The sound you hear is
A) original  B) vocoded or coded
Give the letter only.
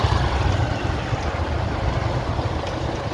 A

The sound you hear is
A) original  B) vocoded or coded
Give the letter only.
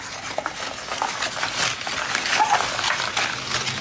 A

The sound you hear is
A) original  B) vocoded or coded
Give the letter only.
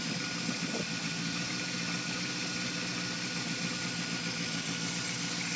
A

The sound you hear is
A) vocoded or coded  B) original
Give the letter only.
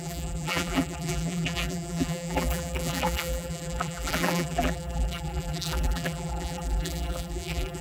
A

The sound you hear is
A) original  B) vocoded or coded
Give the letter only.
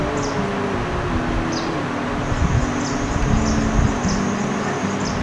A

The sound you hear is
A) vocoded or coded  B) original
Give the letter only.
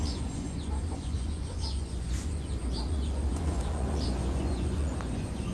A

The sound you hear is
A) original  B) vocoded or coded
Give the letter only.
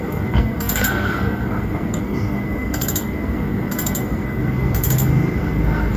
B